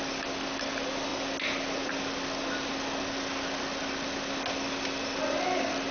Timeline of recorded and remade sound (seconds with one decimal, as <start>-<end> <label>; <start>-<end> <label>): 0.0-5.9 recorded